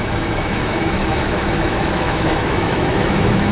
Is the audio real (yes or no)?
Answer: no